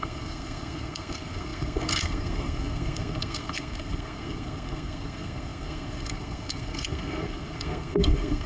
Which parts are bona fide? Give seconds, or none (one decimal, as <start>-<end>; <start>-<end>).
none